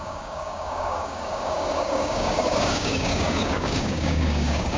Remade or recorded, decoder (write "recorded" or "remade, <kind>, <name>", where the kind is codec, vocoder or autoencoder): remade, codec, DAC